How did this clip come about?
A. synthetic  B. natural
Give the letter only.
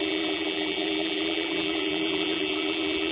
A